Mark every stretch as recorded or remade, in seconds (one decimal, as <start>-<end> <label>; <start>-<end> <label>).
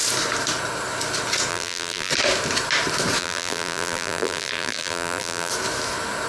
0.0-1.5 recorded; 1.5-2.1 remade; 2.1-3.2 recorded; 3.2-5.5 remade; 5.5-6.3 recorded